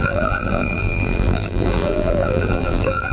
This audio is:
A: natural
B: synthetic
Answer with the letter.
B